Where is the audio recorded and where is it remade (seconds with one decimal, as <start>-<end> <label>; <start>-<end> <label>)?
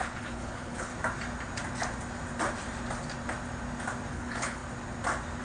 0.0-0.9 remade; 0.9-4.1 recorded; 4.1-4.6 remade; 4.6-5.4 recorded